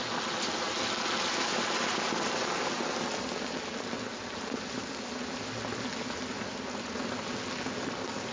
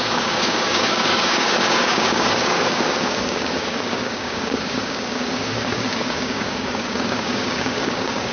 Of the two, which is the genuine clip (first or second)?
first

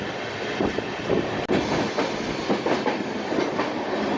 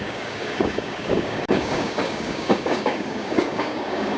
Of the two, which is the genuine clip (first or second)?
first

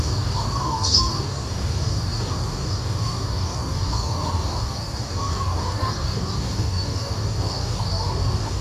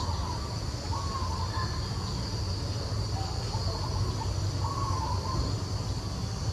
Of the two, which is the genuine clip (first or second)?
second